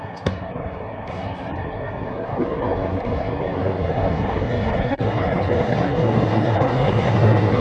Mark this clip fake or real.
fake